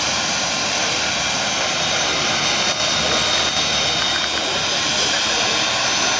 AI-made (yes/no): no